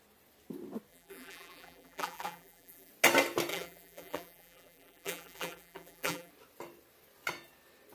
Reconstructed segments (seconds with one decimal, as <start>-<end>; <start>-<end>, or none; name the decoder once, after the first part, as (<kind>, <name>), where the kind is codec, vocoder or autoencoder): 0.9-2.9 (vocoder, BigVGAN v2); 3.5-6.3